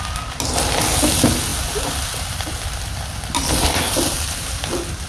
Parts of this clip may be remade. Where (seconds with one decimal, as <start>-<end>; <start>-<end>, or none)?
1.5-4.6

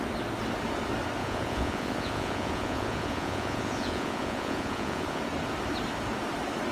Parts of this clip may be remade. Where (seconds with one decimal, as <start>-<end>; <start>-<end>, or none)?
1.2-5.2

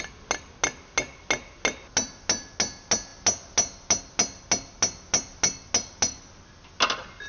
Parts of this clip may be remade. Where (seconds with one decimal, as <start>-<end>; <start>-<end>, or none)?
none

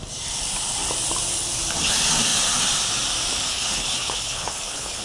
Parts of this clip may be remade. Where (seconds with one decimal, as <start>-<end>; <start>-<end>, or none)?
3.5-5.0

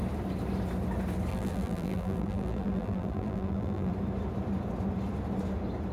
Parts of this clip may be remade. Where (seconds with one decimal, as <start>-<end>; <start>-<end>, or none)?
1.3-3.9